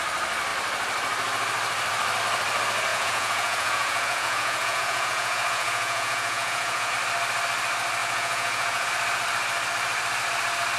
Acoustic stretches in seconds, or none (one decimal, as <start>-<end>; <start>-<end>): 0.0-2.9; 6.9-8.0; 8.9-10.8